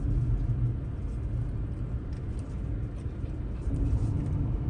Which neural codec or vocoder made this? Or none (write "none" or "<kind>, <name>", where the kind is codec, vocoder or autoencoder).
none